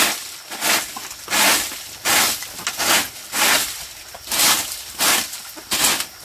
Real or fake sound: real